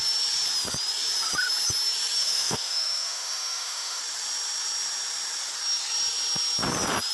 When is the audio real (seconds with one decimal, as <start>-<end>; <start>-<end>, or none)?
0.0-2.2; 4.0-7.1